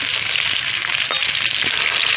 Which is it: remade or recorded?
recorded